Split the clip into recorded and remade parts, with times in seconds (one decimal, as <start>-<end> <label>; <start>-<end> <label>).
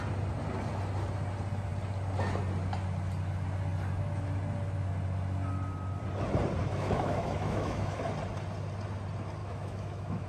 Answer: 0.0-6.6 recorded; 6.6-8.0 remade; 8.0-9.4 recorded; 9.4-10.3 remade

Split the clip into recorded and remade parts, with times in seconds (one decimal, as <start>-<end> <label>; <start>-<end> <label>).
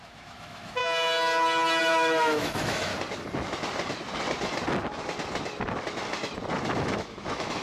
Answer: 0.0-0.8 remade; 0.8-1.8 recorded; 1.8-2.9 remade; 2.9-6.8 recorded; 6.8-7.6 remade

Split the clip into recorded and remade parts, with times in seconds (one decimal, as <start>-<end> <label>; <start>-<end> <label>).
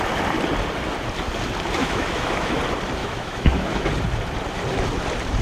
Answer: 0.0-1.8 recorded; 1.8-2.6 remade; 2.6-3.0 recorded; 3.0-3.9 remade; 3.9-5.4 recorded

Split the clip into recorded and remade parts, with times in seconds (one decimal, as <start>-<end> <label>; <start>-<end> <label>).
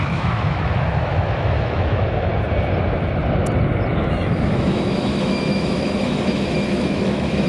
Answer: 0.0-2.3 remade; 2.3-4.0 recorded; 4.0-7.5 remade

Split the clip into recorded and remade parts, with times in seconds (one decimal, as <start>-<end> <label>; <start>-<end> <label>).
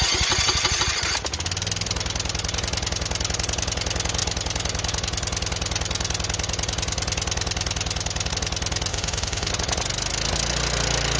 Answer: 0.0-8.9 recorded; 8.9-9.5 remade; 9.5-11.2 recorded